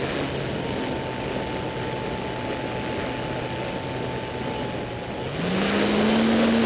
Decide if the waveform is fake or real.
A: real